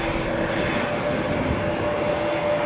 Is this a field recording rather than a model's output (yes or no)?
yes